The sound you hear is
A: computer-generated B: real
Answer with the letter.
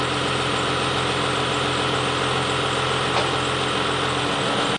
B